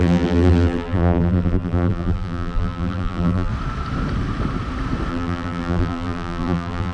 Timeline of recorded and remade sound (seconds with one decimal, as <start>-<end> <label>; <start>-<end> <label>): 0.0-3.5 remade; 3.5-5.1 recorded; 5.1-6.9 remade